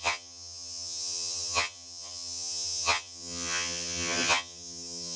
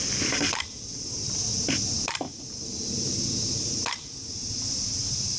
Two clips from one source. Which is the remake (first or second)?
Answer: first